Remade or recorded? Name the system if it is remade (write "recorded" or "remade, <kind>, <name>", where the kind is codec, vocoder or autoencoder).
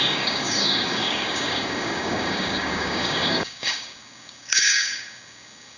remade, codec, DAC